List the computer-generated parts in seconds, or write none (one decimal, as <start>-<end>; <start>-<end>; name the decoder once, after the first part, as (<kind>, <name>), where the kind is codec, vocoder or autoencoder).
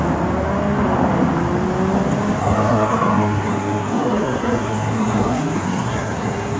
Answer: 2.4-6.6 (codec, SNAC)